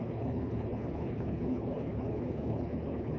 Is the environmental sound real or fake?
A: fake